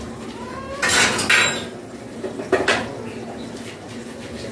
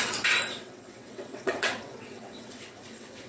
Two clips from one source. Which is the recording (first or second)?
first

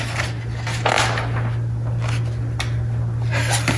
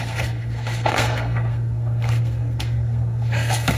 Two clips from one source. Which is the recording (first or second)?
first